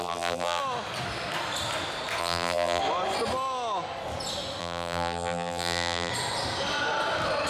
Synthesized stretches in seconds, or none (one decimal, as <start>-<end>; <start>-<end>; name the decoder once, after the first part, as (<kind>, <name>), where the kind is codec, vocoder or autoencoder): 0.0-0.6 (vocoder, BigVGAN v2); 2.2-2.8; 4.6-6.1